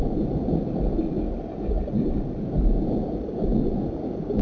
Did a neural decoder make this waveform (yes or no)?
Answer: no